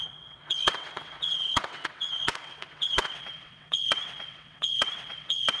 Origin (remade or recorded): remade